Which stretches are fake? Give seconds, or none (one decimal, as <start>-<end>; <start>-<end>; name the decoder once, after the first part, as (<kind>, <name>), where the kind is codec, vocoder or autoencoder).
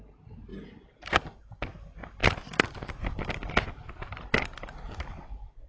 none